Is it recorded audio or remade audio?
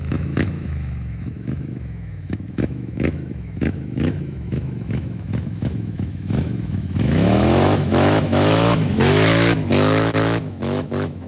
remade